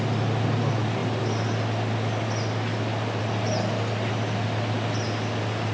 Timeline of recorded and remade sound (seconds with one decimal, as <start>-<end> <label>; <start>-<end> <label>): 0.0-5.7 recorded

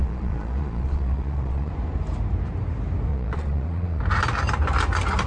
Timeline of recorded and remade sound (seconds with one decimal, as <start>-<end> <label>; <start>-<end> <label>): 0.0-1.7 remade; 1.7-3.1 recorded; 3.1-4.0 remade; 4.0-5.3 recorded

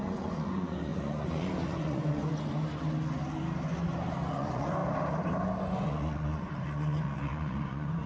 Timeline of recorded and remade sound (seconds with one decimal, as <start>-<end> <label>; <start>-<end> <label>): 0.0-2.2 remade; 2.2-4.3 recorded; 4.3-4.8 remade; 4.8-5.6 recorded; 5.6-8.1 remade

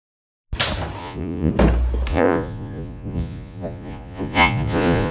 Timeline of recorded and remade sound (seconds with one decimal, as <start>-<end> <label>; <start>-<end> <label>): 0.0-1.0 recorded; 1.0-1.5 remade; 1.5-2.1 recorded; 2.1-5.1 remade

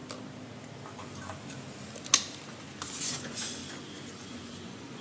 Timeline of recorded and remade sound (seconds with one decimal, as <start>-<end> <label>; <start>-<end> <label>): 0.0-3.0 recorded; 3.0-3.6 remade; 3.6-4.1 recorded; 4.1-5.0 remade

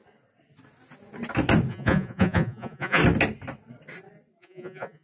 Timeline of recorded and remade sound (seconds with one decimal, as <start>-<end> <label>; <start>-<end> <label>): 0.0-1.7 recorded; 1.7-3.0 remade; 3.0-4.4 recorded; 4.4-5.0 remade